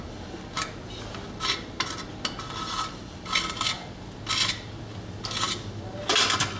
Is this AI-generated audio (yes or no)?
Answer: no